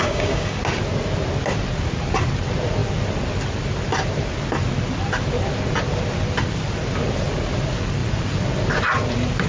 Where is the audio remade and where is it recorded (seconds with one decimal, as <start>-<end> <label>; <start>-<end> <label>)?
0.0-0.6 remade; 0.6-9.5 recorded